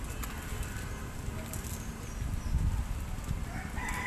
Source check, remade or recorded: recorded